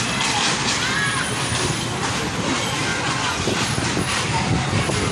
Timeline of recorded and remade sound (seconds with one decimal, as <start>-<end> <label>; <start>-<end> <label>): 0.0-2.9 recorded; 2.9-3.4 remade; 3.4-5.1 recorded